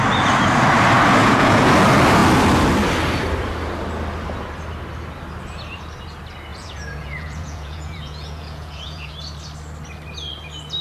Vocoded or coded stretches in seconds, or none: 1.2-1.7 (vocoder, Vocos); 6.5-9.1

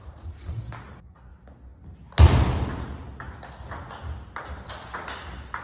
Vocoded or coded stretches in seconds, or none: 0.0-0.6 (vocoder, Vocos)

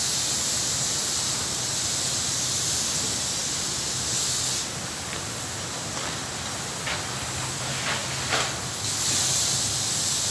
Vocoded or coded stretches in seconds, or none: none

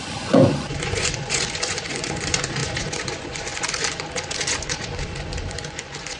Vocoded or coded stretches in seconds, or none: 0.0-6.2 (vocoder, Vocos)

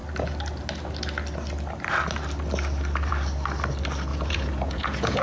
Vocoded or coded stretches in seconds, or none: 4.1-5.2 (vocoder, Vocos)